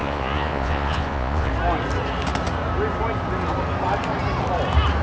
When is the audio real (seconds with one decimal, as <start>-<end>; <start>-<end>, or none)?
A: 1.5-5.0